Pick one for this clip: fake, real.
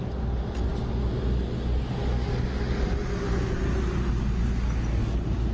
real